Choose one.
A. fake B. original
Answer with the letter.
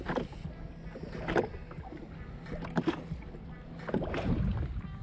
B